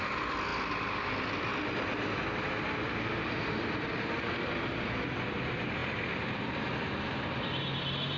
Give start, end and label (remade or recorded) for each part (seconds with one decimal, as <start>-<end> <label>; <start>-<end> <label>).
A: 0.0-8.2 recorded